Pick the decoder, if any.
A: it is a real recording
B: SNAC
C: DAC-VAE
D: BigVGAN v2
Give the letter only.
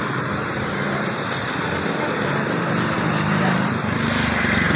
A